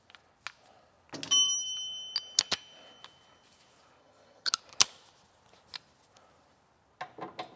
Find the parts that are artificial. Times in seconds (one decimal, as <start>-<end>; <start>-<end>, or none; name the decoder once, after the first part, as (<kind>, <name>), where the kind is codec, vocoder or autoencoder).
4.0-4.5 (vocoder, HiFi-GAN)